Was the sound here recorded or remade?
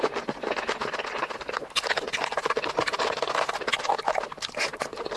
recorded